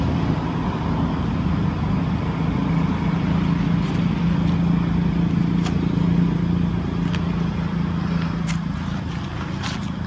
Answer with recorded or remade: recorded